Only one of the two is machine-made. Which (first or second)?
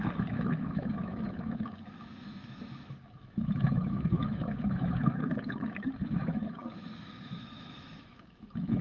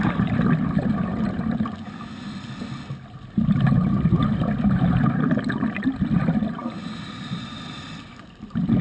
first